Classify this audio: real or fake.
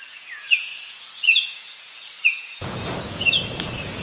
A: fake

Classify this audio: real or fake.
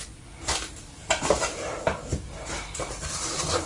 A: real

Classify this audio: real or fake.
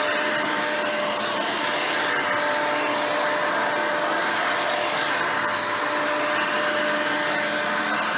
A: real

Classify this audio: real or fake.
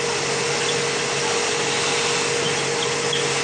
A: real